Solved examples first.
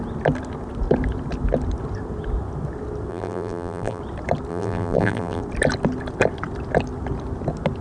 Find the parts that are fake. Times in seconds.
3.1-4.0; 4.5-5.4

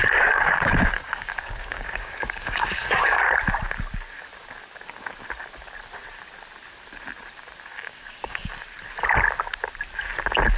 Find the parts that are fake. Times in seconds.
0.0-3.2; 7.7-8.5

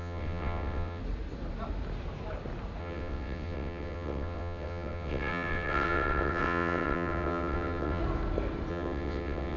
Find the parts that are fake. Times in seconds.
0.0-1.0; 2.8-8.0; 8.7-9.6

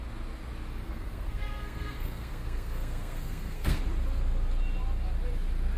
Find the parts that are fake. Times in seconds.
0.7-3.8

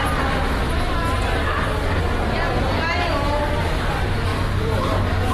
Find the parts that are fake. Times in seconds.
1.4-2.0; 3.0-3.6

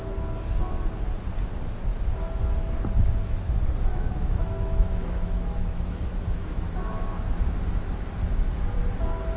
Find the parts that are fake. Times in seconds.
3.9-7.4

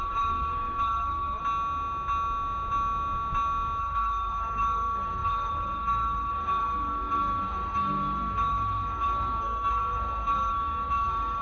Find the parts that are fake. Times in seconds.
0.0-1.4; 3.8-11.4